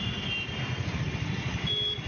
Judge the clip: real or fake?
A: real